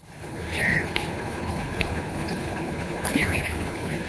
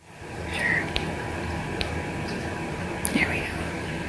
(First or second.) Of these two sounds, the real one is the second